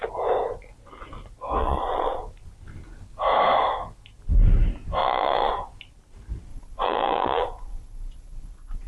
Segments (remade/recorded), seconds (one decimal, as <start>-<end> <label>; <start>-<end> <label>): 0.0-1.6 recorded; 1.6-2.2 remade; 2.2-5.0 recorded; 5.0-5.5 remade; 5.5-6.5 recorded; 6.5-8.9 remade